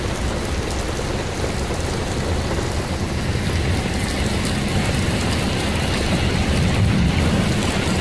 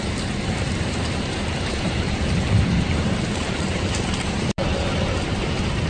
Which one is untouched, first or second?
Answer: first